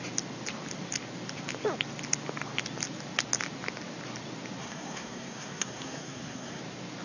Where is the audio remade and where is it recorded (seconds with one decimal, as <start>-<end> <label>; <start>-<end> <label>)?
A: 0.0-4.6 recorded; 4.6-6.6 remade; 6.6-7.0 recorded